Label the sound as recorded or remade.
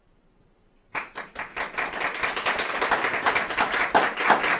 recorded